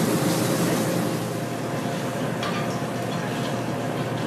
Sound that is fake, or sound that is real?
real